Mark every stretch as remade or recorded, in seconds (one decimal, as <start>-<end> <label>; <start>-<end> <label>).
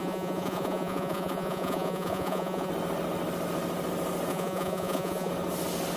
0.0-2.7 remade; 2.7-4.3 recorded; 4.3-5.3 remade; 5.3-6.0 recorded